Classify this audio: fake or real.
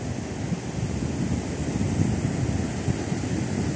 real